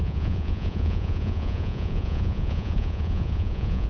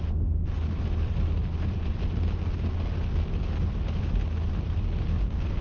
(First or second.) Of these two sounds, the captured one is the second